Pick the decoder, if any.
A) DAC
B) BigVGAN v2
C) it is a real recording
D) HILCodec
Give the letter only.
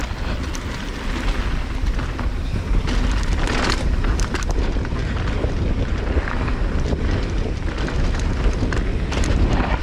C